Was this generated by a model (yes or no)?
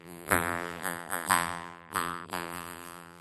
yes